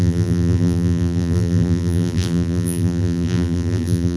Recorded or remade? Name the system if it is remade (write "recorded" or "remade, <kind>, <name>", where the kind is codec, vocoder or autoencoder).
remade, vocoder, BigVGAN v2